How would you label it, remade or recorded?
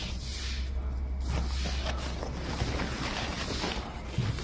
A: recorded